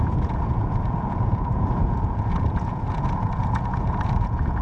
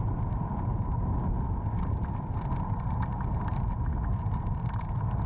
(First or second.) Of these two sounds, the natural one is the second